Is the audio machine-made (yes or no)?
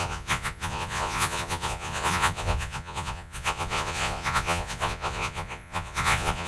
yes